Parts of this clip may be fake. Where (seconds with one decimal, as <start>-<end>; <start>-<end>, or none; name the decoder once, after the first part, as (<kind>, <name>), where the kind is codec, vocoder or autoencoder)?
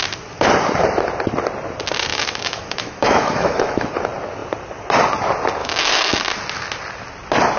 2.1-3.9 (autoencoder, DAC-VAE); 5.6-6.2